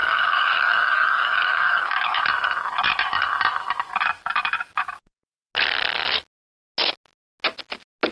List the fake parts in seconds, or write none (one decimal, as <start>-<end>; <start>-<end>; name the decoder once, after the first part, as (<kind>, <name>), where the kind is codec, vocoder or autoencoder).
0.0-2.2 (codec, DAC)